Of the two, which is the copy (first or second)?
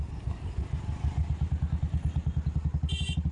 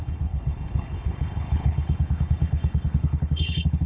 second